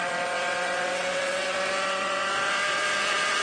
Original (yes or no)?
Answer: no